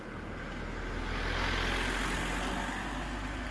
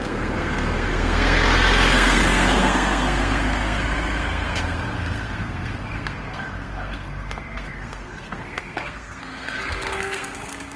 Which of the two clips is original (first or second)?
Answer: first